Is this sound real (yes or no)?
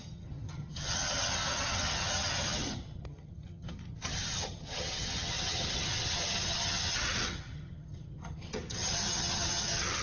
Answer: no